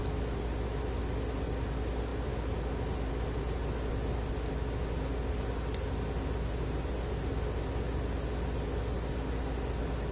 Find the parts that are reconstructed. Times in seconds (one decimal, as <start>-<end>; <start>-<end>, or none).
none